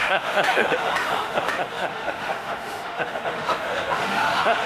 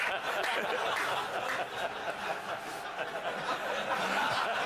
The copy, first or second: first